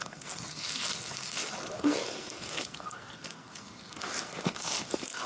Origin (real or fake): fake